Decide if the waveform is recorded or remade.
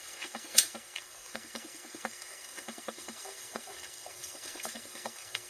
remade